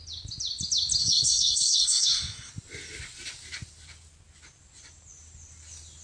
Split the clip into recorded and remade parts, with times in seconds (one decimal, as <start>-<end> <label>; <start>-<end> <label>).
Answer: 0.0-1.0 recorded; 1.0-2.5 remade; 2.5-6.0 recorded